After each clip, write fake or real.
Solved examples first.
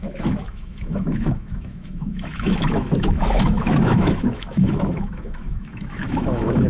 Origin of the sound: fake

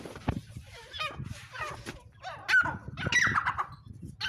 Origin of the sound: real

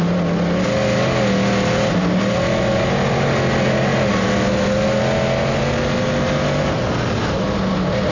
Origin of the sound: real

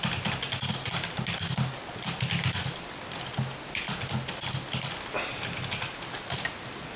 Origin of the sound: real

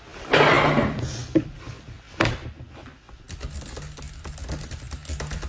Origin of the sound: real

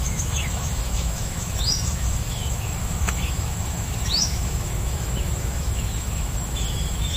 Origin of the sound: fake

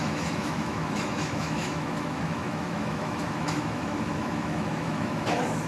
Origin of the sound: fake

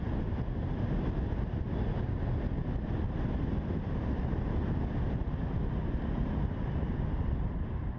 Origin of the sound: real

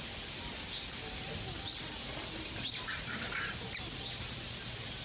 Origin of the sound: real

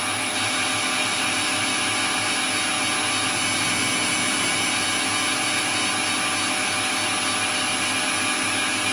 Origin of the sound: real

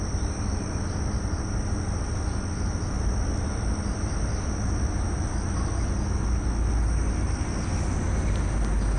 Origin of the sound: real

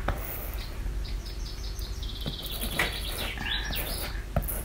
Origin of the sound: real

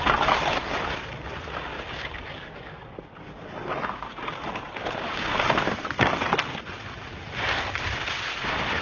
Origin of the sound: real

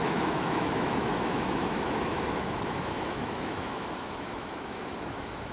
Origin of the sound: fake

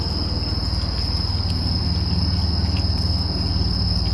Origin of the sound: real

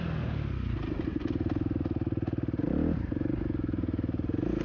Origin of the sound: real